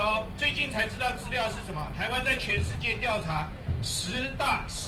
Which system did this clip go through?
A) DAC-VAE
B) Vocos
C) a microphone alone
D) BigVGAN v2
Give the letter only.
A